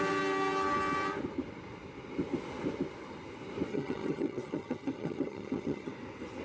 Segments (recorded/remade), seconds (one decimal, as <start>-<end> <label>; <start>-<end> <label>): 0.0-3.7 recorded; 3.7-5.9 remade; 5.9-6.4 recorded